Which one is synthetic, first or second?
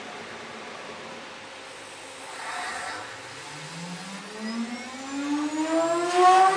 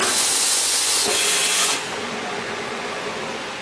second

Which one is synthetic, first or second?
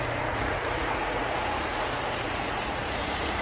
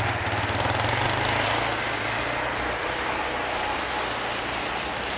first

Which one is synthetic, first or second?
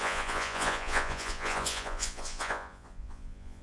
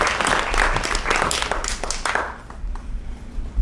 first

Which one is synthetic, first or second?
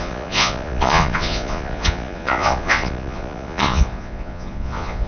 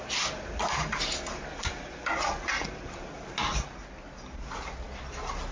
first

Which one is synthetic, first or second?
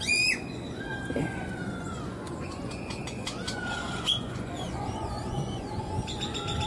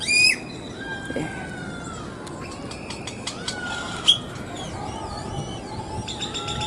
first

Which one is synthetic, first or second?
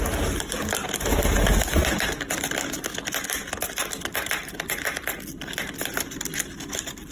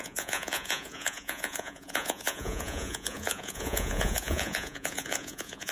second